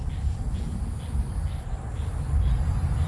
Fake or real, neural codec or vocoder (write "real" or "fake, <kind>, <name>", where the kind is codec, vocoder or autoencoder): real